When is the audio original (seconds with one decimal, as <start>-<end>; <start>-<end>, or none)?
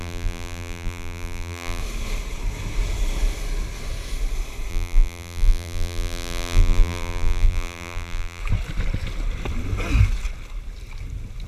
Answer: 1.8-4.7; 8.4-11.5